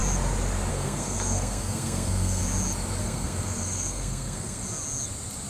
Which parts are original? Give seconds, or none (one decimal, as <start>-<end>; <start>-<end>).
0.0-0.7; 2.4-3.0; 4.6-5.5